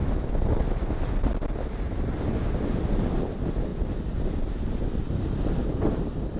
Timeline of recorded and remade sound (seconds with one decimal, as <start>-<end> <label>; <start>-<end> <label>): 0.0-6.4 recorded